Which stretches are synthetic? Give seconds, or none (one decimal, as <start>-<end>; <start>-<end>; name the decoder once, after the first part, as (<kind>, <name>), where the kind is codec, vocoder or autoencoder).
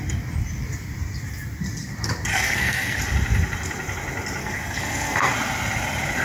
2.3-3.0 (codec, SNAC); 4.4-5.3